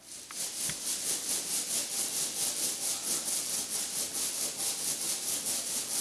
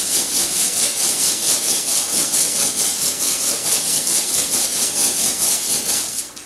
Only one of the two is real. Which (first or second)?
first